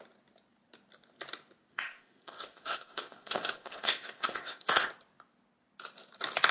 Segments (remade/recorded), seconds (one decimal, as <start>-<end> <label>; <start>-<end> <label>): 0.0-1.7 recorded; 1.7-4.9 remade; 4.9-6.5 recorded